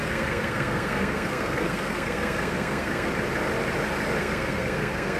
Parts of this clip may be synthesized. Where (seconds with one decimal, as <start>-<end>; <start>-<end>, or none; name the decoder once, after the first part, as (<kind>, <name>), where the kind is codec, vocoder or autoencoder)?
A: 0.0-3.1 (codec, SNAC); 4.2-5.2